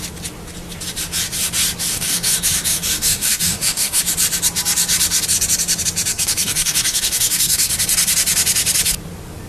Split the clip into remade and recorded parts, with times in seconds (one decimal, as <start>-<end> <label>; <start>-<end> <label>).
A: 0.0-1.9 recorded; 1.9-4.0 remade; 4.0-6.1 recorded; 6.1-7.7 remade; 7.7-9.5 recorded